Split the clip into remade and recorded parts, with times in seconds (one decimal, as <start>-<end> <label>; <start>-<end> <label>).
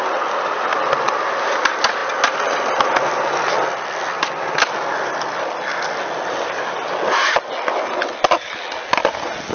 0.0-9.5 recorded